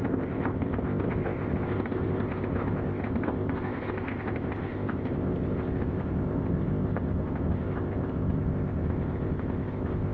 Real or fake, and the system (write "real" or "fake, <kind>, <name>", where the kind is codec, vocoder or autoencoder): fake, codec, ZipCodec